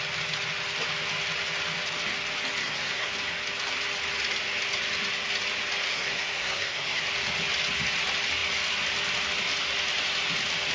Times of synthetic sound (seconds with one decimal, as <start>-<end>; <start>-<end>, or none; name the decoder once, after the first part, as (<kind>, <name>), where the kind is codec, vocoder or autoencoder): 2.6-3.1 (codec, SNAC); 5.9-7.0